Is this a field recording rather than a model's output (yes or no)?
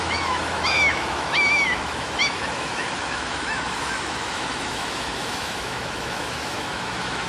no